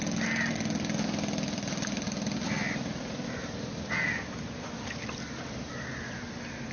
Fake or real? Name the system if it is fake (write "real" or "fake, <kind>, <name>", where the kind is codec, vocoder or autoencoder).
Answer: real